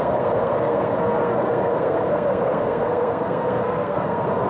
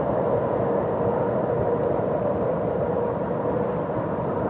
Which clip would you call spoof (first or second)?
first